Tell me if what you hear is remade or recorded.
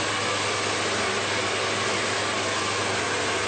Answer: recorded